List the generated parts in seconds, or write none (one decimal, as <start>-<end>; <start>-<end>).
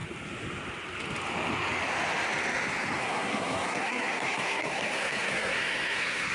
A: 3.0-6.3